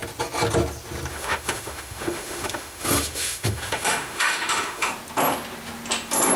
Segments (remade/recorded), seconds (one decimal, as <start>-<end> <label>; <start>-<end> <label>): 0.0-1.1 recorded; 1.1-4.9 remade; 4.9-6.4 recorded